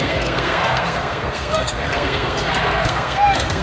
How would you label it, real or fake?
fake